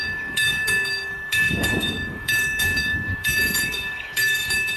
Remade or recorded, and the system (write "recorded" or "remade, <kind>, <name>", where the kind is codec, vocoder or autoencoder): remade, codec, DAC